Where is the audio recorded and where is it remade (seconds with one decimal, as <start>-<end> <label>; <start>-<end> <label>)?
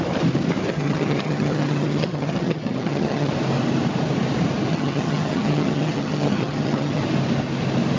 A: 0.0-0.7 recorded; 0.7-3.3 remade; 3.3-4.7 recorded; 4.7-7.0 remade; 7.0-8.0 recorded